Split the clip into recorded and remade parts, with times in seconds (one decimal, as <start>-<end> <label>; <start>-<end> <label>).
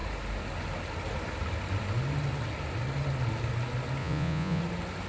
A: 0.0-4.0 recorded; 4.0-4.6 remade; 4.6-5.1 recorded